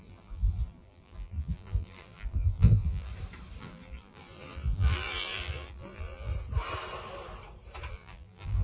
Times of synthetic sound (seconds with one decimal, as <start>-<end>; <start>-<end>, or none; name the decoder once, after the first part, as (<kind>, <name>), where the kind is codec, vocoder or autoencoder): 0.0-3.1 (vocoder, BigVGAN v2); 3.6-6.3; 7.9-8.6

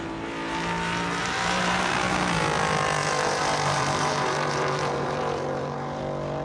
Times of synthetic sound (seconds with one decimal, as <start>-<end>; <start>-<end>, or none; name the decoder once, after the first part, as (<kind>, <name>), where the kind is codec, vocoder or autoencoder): 1.2-1.9 (vocoder, BigVGAN v2); 3.0-6.0